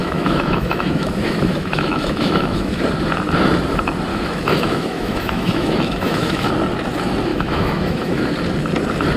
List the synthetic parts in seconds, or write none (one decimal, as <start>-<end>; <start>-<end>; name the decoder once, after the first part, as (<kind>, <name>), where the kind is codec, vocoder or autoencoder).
0.0-2.8 (autoencoder, DAC-VAE); 4.1-6.5; 7.3-8.2